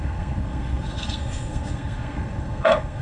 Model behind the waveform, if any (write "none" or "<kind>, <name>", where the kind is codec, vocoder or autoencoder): codec, SNAC